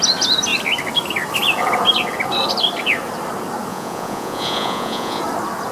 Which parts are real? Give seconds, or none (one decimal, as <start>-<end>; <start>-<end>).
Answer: 0.0-3.7; 5.2-5.7